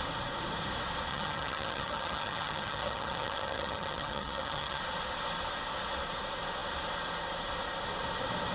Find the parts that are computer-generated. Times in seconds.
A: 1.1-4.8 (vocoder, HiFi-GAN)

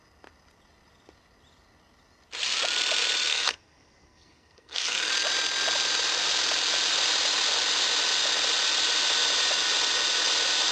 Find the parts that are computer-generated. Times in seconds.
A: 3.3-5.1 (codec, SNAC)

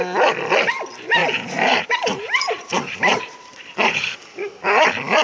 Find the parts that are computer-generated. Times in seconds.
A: 1.2-4.3 (vocoder, BigVGAN v2)